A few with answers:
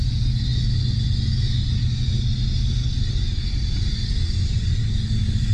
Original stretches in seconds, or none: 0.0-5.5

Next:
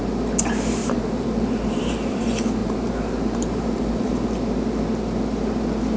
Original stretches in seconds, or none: 0.0-0.8; 2.2-2.6; 4.1-6.0

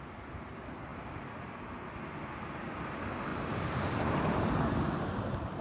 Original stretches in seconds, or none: 0.0-3.3

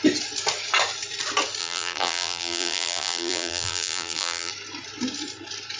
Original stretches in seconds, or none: 0.0-1.6; 4.5-5.8

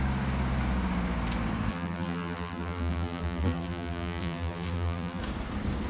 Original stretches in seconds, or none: 0.0-1.7; 5.2-5.9

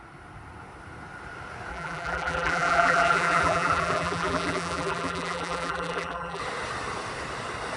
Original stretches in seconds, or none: 0.0-1.7; 6.4-7.8

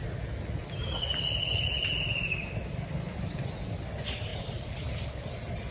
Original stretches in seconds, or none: 0.0-0.6; 3.4-4.3; 5.1-5.7

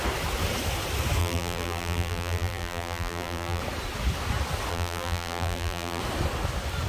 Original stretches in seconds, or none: 0.0-1.2; 3.6-4.7; 6.0-6.9